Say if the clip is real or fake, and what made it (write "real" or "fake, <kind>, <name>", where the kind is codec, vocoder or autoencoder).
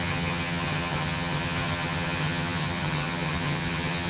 fake, vocoder, HiFi-GAN